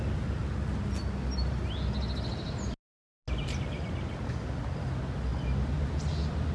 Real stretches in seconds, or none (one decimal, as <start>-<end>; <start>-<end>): 0.0-6.5